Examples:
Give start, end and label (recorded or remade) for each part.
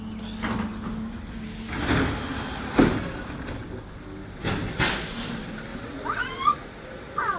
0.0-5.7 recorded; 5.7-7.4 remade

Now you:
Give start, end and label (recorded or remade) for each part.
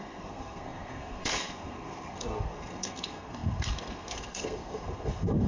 0.0-5.5 remade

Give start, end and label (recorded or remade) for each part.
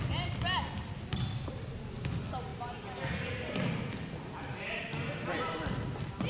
0.0-6.3 recorded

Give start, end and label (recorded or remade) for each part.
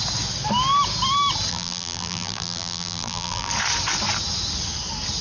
0.0-1.5 recorded; 1.5-3.5 remade; 3.5-5.2 recorded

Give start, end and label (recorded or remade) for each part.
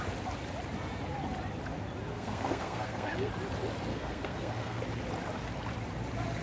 0.0-2.1 recorded; 2.1-3.3 remade; 3.3-3.9 recorded; 3.9-4.8 remade; 4.8-6.4 recorded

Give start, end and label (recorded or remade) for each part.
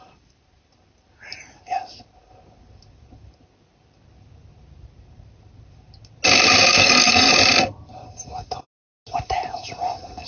0.0-6.8 recorded; 6.8-7.3 remade; 7.3-10.3 recorded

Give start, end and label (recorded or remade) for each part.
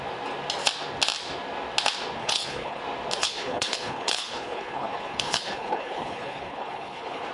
0.0-2.2 recorded; 2.2-2.8 remade; 2.8-3.2 recorded; 3.2-7.3 remade